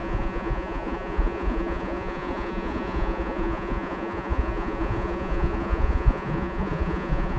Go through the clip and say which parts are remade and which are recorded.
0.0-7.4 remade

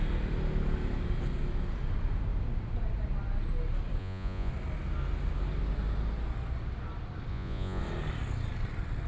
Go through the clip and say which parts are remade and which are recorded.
0.0-4.0 recorded; 4.0-4.5 remade; 4.5-7.3 recorded; 7.3-7.8 remade; 7.8-9.1 recorded

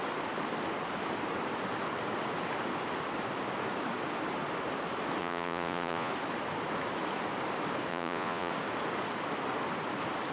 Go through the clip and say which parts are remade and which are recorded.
0.0-5.2 recorded; 5.2-6.1 remade; 6.1-7.9 recorded; 7.9-8.5 remade; 8.5-10.3 recorded

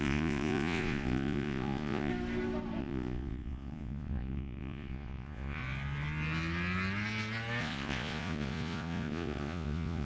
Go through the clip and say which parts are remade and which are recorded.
0.0-2.1 remade; 2.1-2.8 recorded; 2.8-5.6 remade; 5.6-7.6 recorded; 7.6-10.0 remade

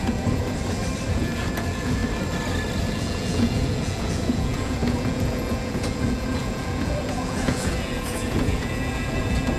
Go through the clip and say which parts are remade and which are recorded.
0.0-0.4 remade; 0.4-1.1 recorded; 1.1-2.0 remade; 2.0-2.8 recorded; 2.8-9.6 remade